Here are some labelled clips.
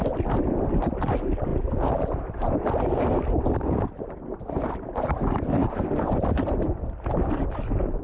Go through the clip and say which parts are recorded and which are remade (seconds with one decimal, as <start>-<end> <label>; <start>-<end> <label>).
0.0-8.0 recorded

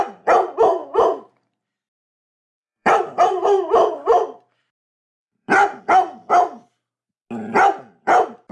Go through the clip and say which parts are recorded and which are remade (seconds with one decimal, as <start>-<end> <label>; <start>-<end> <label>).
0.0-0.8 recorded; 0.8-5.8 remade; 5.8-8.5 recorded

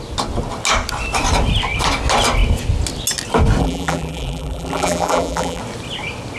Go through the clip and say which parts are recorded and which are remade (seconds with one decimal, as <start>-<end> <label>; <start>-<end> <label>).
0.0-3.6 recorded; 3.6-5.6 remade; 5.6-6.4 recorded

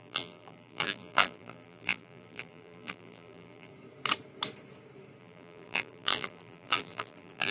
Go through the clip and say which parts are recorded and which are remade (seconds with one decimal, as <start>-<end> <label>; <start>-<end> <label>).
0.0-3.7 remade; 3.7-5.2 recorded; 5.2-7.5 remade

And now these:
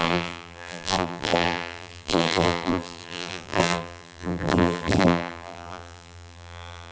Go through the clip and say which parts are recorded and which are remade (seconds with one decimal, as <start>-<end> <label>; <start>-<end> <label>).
0.0-6.9 remade

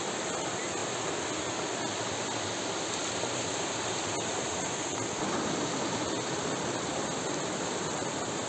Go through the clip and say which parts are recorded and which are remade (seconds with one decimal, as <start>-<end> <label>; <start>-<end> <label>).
0.0-8.5 recorded

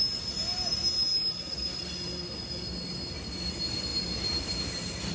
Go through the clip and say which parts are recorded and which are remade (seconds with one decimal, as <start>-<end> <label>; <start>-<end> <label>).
0.0-5.1 recorded